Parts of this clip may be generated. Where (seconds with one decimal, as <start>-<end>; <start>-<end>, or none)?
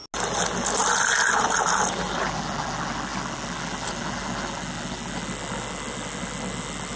none